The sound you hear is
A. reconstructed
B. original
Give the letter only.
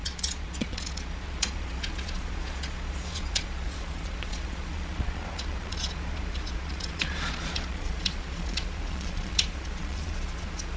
A